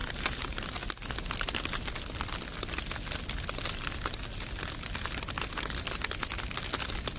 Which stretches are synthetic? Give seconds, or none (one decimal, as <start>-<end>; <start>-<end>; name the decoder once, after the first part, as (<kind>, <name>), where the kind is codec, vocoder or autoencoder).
0.0-0.7 (vocoder, BigVGAN v2)